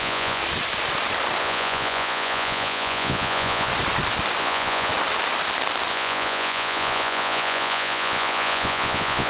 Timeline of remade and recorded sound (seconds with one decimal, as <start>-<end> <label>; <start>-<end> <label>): 0.0-0.4 remade; 0.4-1.4 recorded; 1.4-3.7 remade; 3.7-4.4 recorded; 4.4-4.9 remade; 4.9-5.9 recorded; 5.9-9.3 remade